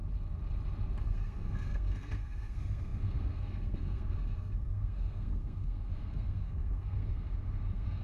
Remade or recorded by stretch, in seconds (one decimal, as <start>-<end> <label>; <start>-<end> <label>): 0.0-1.0 recorded; 1.0-8.0 remade